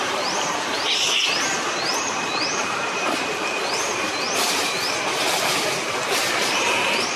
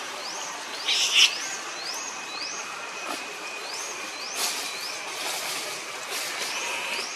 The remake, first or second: first